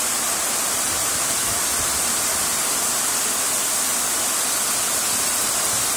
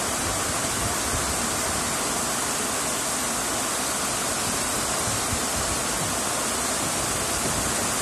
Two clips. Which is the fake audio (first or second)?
first